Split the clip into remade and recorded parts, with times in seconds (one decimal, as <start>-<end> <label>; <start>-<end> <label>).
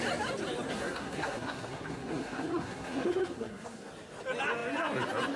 0.0-0.7 recorded; 0.7-3.9 remade; 3.9-5.4 recorded